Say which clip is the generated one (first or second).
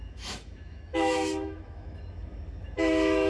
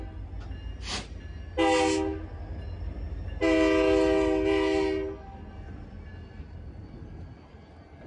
first